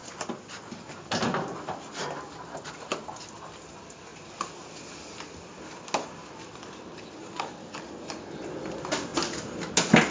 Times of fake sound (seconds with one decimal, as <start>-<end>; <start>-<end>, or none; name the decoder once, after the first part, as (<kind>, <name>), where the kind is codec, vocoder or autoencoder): none